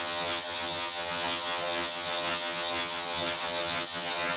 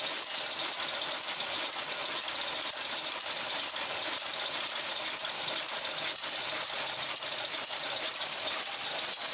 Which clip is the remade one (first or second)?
first